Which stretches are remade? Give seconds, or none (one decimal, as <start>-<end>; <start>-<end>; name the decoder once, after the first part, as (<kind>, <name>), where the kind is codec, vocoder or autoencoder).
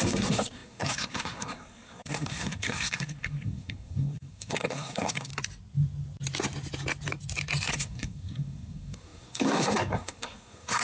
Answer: 0.0-5.3 (codec, SNAC); 7.7-10.8